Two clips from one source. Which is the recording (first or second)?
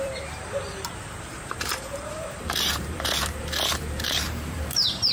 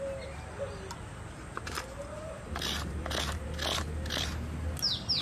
second